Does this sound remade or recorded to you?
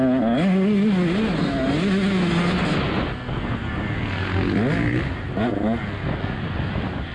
recorded